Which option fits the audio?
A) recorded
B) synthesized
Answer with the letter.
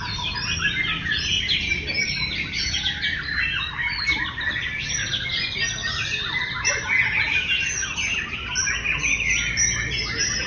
A